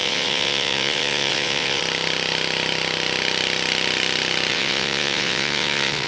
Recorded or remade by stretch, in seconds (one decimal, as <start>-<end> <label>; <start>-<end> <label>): 0.0-1.8 remade; 1.8-4.5 recorded; 4.5-6.1 remade

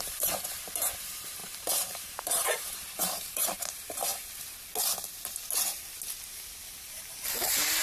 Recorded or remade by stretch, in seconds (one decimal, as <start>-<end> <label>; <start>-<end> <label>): 0.0-4.1 remade; 4.1-6.9 recorded; 6.9-7.8 remade

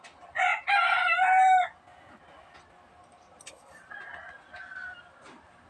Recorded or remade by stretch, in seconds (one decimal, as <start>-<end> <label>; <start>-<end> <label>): 0.0-5.7 recorded